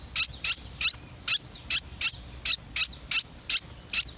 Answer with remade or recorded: recorded